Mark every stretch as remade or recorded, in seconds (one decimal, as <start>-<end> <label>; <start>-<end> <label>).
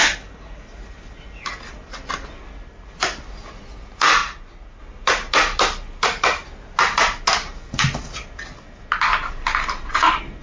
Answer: 0.0-10.4 recorded